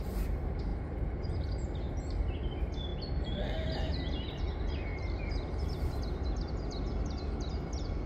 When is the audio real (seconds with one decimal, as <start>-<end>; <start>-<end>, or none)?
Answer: 0.0-0.7; 2.0-2.9; 4.4-8.1